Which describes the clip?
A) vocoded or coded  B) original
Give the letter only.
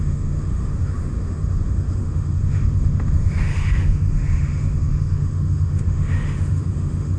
A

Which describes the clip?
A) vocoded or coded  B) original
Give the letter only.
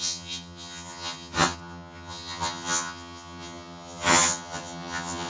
A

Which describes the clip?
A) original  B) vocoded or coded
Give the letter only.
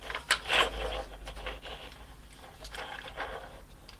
A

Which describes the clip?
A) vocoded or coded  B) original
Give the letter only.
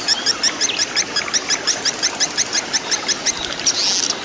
B